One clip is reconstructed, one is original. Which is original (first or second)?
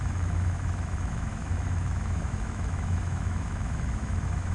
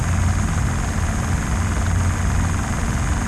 second